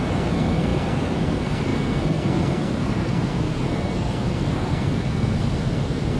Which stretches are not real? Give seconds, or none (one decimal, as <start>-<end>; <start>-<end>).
0.0-6.2